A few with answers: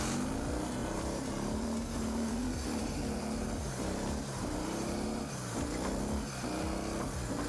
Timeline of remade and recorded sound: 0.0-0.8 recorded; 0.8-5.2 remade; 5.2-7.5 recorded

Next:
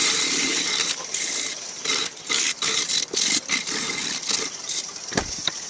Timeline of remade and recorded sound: 0.0-4.0 remade; 4.0-4.6 recorded; 4.6-5.7 remade

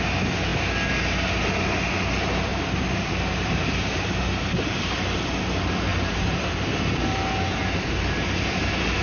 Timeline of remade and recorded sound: 0.0-2.5 recorded; 2.5-4.8 remade; 4.8-5.9 recorded; 5.9-8.6 remade; 8.6-9.0 recorded